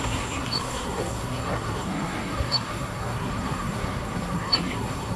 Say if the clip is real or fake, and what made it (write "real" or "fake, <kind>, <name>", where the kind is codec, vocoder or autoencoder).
fake, codec, SNAC